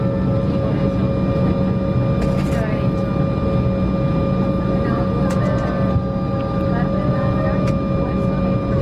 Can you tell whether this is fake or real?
real